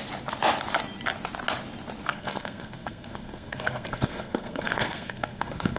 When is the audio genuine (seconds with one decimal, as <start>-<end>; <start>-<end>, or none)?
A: 0.0-2.1